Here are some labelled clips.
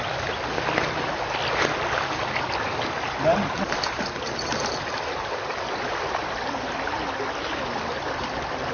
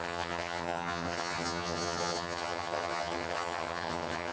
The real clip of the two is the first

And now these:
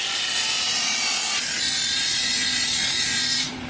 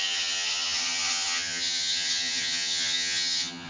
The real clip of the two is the first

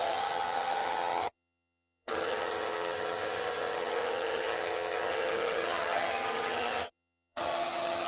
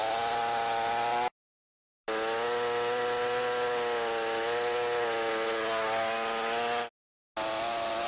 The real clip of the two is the second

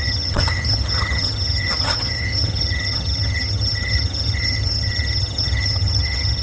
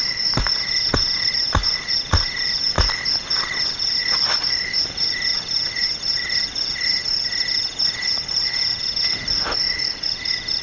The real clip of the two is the second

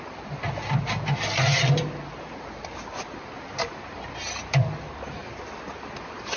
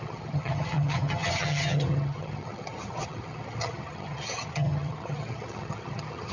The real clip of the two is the first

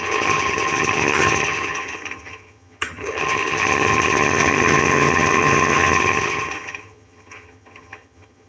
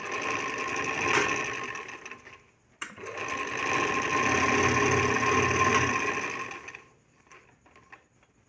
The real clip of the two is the second